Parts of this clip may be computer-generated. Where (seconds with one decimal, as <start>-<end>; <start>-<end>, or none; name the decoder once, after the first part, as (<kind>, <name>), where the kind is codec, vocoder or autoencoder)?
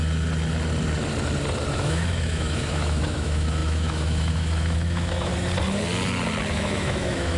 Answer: 1.7-5.3 (autoencoder, DAC-VAE); 6.5-7.4